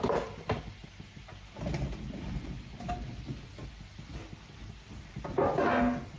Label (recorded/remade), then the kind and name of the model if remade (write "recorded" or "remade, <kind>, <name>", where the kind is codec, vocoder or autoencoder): recorded